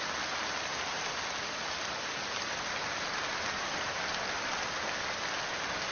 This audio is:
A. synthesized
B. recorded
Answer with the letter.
B